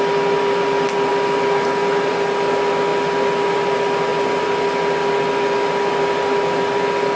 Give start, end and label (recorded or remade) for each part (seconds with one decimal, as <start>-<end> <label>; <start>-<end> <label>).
0.0-7.2 recorded